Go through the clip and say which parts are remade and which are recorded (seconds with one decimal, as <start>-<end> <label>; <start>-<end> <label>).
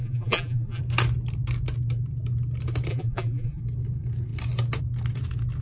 0.0-0.8 remade; 0.8-2.9 recorded; 2.9-3.6 remade; 3.6-5.6 recorded